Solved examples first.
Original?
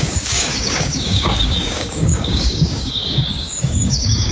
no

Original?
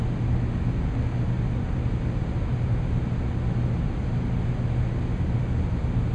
yes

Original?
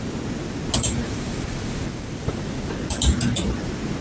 yes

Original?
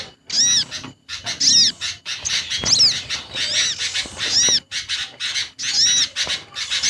yes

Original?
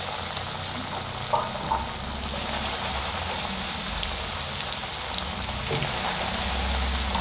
yes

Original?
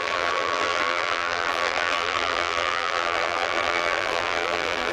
no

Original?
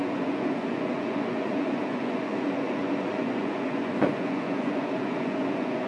no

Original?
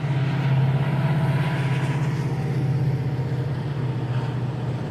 yes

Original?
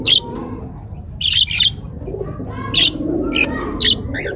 yes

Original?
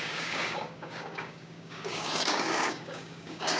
no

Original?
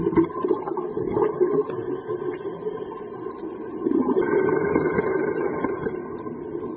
yes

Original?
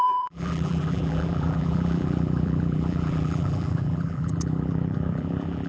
no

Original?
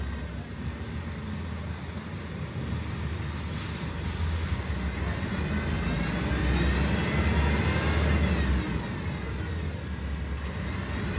yes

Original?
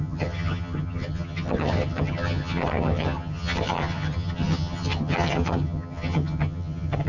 no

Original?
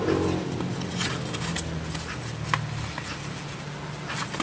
yes